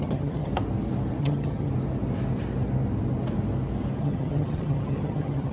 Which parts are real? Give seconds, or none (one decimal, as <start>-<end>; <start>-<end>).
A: 0.5-1.2; 1.7-4.0